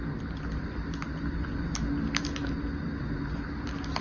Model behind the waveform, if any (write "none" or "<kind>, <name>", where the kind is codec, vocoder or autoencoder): none